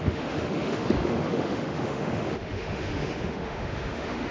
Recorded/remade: remade